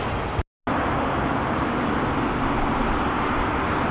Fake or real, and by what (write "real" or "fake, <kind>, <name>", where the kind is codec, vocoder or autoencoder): real